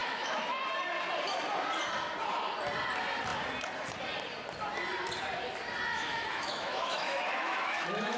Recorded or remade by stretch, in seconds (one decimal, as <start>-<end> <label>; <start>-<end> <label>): 0.0-0.6 remade; 0.6-5.9 recorded; 5.9-8.2 remade